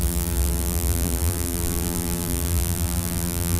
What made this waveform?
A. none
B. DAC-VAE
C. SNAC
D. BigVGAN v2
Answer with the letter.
D